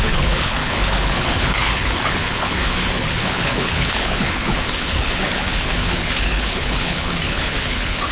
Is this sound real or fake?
fake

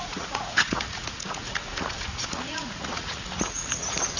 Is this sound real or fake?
fake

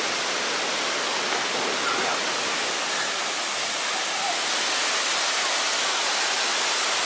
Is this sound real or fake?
real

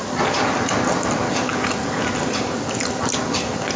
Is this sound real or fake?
real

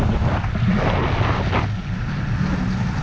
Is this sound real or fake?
real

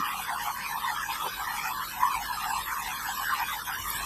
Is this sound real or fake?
real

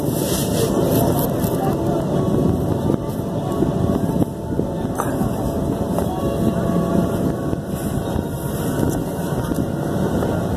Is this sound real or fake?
real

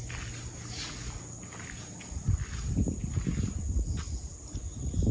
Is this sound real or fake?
real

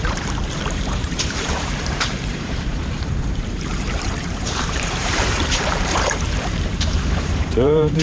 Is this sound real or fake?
fake